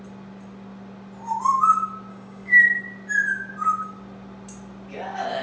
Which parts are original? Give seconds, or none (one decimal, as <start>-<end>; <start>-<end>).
0.0-2.1; 2.8-5.4